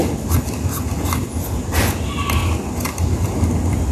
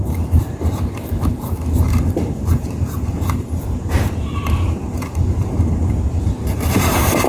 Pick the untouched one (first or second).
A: first